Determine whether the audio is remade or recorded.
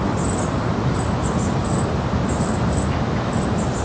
recorded